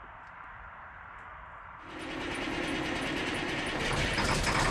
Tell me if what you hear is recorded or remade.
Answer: recorded